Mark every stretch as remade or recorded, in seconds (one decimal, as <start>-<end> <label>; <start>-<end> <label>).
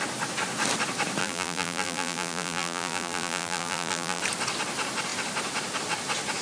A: 0.0-1.2 recorded; 1.2-4.2 remade; 4.2-6.4 recorded